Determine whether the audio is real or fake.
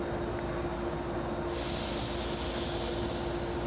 real